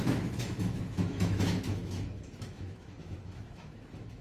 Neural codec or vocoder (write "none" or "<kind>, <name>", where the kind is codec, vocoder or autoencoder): autoencoder, DAC-VAE